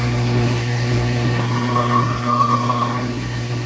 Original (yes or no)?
no